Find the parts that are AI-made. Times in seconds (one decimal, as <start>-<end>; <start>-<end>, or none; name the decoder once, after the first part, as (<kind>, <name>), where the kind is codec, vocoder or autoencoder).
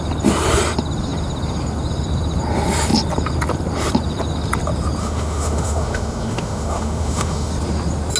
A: 5.0-7.5 (autoencoder, DAC-VAE)